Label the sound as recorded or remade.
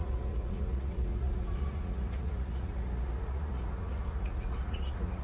remade